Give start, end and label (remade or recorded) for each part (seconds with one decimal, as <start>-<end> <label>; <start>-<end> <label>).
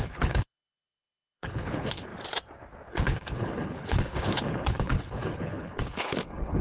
0.0-2.1 remade; 2.1-2.9 recorded; 2.9-6.6 remade